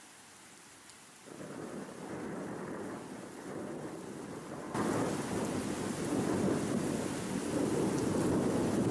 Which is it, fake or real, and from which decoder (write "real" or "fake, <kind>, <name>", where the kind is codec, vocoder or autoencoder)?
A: real